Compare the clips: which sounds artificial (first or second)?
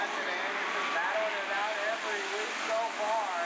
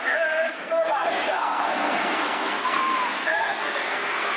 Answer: second